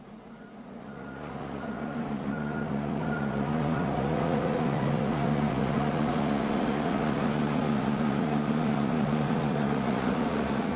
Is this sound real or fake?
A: fake